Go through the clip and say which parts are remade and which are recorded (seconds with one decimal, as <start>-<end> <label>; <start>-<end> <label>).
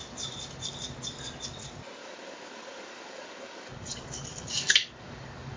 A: 0.0-2.0 recorded; 2.0-5.6 remade